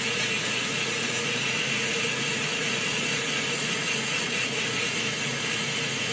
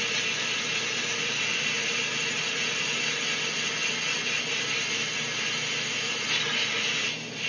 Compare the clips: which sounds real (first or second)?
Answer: second